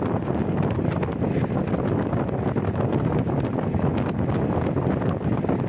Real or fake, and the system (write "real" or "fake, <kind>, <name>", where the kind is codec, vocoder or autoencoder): real